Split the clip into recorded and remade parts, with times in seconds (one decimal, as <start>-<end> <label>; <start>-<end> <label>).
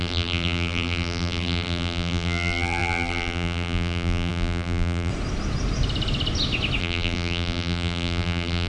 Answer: 0.0-5.1 remade; 5.1-6.8 recorded; 6.8-8.7 remade